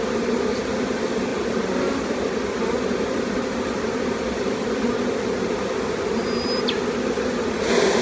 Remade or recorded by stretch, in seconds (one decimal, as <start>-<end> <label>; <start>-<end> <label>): 0.0-1.3 recorded; 1.3-4.8 remade; 4.8-8.0 recorded